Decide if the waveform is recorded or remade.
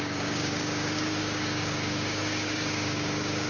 remade